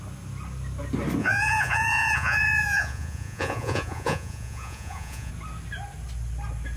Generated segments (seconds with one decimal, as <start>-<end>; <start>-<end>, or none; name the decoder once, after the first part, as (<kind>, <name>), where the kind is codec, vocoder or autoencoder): 1.2-5.3 (vocoder, Vocos)